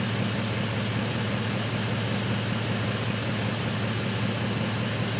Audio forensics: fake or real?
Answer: real